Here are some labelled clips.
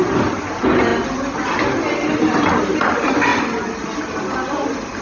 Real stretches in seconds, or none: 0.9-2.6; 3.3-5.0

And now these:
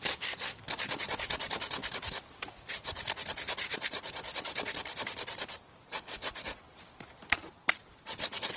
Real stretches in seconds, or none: 0.0-1.8; 2.4-7.4; 8.0-8.6

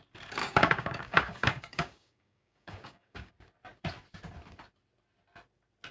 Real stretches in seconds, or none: 0.0-0.4; 3.3-5.9

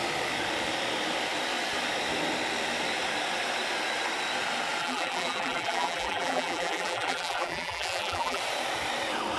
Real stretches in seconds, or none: 0.0-4.8; 8.4-9.4

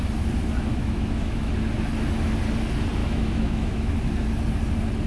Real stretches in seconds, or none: 0.0-0.7; 1.5-3.0; 4.0-5.1

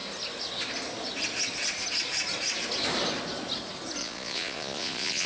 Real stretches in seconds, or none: 0.0-4.0

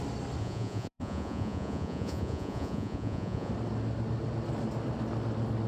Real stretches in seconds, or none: 0.0-0.4; 3.5-5.7

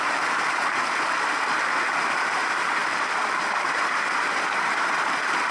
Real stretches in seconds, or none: 0.0-5.5